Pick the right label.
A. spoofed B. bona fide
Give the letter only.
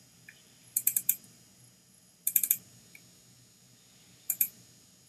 A